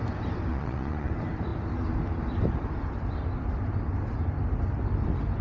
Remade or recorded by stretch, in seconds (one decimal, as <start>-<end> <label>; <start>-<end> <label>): 0.0-0.5 recorded; 0.5-1.1 remade; 1.1-5.4 recorded